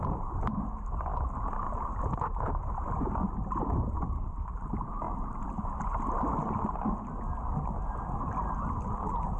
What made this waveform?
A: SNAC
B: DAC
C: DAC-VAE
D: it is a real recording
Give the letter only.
D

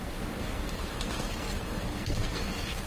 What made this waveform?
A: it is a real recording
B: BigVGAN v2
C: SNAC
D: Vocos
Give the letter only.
C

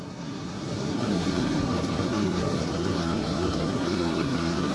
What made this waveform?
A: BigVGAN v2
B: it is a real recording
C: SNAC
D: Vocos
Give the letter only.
C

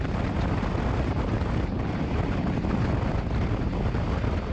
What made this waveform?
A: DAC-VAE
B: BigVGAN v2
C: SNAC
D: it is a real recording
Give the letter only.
D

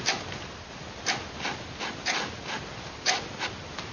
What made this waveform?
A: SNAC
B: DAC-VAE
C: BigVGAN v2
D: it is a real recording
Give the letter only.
D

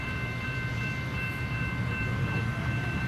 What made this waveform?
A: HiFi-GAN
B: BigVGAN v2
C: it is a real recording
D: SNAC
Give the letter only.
C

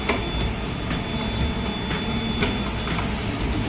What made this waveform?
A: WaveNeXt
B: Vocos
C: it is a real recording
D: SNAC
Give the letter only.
C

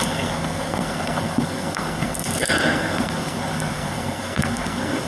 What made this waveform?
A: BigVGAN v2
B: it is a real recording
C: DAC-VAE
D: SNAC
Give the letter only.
D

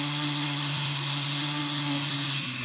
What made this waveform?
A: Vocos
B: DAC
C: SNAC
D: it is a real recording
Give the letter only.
C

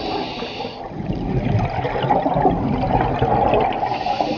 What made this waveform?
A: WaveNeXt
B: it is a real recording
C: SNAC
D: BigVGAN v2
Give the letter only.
B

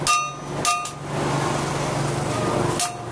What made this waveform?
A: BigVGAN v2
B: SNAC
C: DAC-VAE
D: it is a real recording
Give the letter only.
D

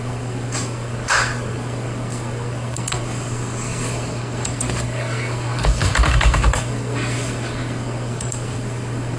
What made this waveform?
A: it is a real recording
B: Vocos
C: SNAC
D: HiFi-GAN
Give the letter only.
C